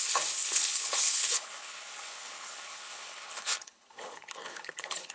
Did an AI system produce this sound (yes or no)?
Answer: yes